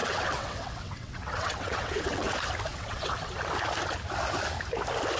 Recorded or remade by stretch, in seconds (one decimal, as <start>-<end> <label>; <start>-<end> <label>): 0.0-2.3 remade; 2.3-2.7 recorded; 2.7-3.3 remade; 3.3-5.2 recorded